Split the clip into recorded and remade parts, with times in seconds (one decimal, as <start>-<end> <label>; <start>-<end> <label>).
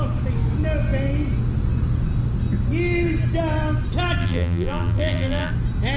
0.0-4.2 recorded; 4.2-5.5 remade; 5.5-6.0 recorded